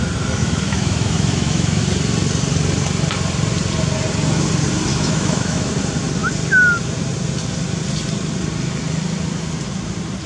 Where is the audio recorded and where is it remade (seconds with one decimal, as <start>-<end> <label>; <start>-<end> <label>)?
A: 0.0-0.4 recorded; 0.4-1.8 remade; 1.8-4.9 recorded; 4.9-5.7 remade; 5.7-10.3 recorded